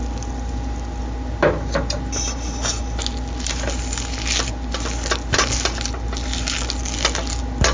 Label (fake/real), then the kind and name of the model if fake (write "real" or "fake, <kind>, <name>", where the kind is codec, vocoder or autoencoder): real